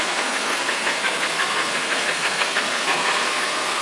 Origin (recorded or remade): remade